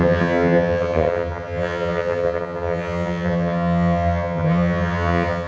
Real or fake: fake